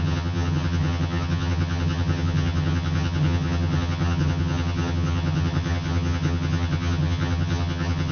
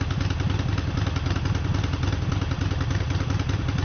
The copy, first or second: first